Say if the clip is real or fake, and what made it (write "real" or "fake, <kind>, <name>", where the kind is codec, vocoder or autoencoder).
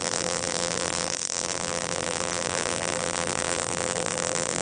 fake, vocoder, BigVGAN v2